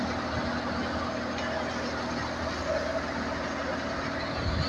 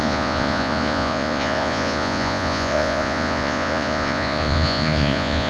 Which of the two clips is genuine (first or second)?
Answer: first